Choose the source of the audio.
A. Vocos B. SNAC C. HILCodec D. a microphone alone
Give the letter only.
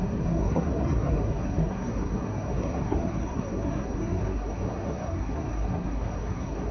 B